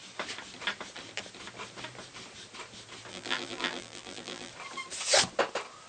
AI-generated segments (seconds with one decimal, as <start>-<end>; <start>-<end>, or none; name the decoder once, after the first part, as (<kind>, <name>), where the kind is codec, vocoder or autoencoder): 3.1-4.5 (vocoder, BigVGAN v2)